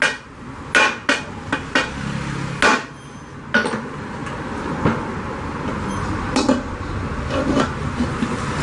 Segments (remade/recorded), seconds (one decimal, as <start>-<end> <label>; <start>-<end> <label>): 0.0-8.6 recorded